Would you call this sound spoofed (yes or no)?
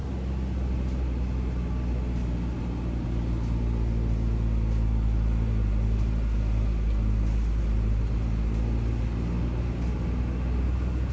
no